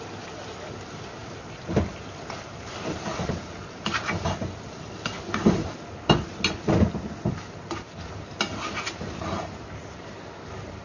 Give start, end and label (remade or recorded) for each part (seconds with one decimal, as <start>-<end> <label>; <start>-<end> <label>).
0.0-10.8 recorded

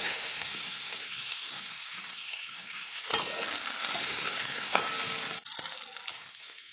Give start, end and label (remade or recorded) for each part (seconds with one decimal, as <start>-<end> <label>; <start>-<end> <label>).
0.0-3.1 remade; 3.1-4.0 recorded; 4.0-4.8 remade; 4.8-6.1 recorded; 6.1-6.7 remade

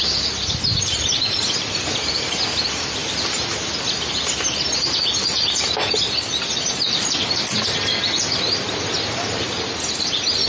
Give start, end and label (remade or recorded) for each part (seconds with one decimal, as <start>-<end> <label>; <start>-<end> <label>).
0.0-10.5 recorded

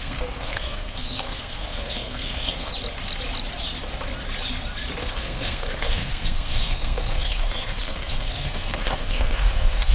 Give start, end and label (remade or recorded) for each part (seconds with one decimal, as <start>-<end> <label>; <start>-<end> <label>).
0.0-2.7 remade; 2.7-5.0 recorded; 5.0-9.9 remade